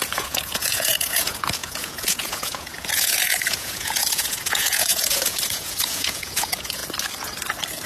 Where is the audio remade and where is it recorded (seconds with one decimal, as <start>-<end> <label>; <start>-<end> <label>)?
0.0-6.8 remade; 6.8-7.9 recorded

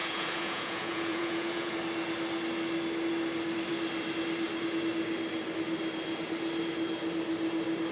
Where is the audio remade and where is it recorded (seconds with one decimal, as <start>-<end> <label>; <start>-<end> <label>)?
0.0-1.7 remade; 1.7-7.9 recorded

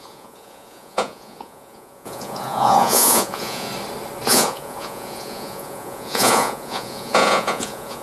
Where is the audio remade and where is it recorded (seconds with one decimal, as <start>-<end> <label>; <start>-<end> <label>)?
0.0-3.7 remade; 3.7-4.3 recorded; 4.3-8.0 remade

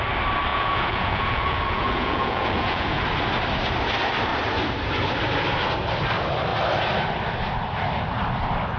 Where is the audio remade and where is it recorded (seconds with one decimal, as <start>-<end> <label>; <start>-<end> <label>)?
0.0-0.5 recorded; 0.5-3.0 remade; 3.0-8.8 recorded

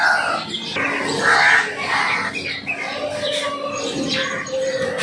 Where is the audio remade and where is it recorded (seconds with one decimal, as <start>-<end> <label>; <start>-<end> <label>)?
0.0-5.0 recorded

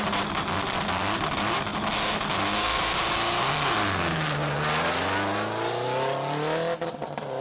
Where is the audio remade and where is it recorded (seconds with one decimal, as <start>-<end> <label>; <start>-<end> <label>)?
0.0-7.4 recorded

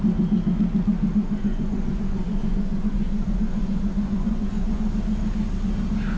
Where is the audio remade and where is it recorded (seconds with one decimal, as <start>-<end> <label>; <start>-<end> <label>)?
0.0-1.2 recorded; 1.2-4.9 remade; 4.9-6.2 recorded

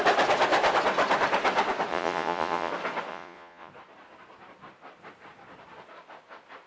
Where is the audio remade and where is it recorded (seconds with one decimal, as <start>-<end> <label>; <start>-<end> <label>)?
0.0-1.9 recorded; 1.9-2.7 remade; 2.7-3.1 recorded; 3.1-3.7 remade; 3.7-6.7 recorded